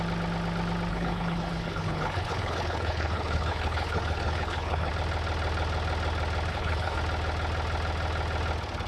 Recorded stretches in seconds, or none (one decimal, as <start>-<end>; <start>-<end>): 0.0-0.9; 4.9-6.5; 7.0-8.9